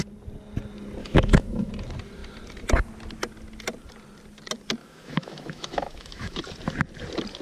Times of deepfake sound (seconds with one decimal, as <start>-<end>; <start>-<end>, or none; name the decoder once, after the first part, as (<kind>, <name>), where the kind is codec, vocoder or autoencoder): 1.0-1.7 (autoencoder, DAC-VAE); 4.8-6.4